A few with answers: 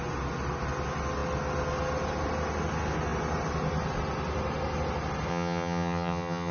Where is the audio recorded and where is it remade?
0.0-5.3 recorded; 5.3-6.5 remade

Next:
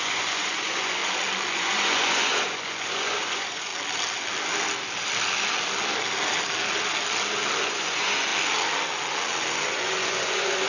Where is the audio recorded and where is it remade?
0.0-1.0 remade; 1.0-1.5 recorded; 1.5-3.7 remade; 3.7-7.6 recorded; 7.6-8.3 remade; 8.3-9.7 recorded; 9.7-10.7 remade